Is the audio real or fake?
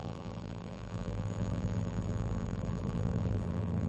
fake